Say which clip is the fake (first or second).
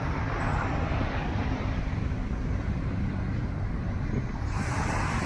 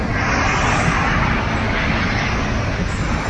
first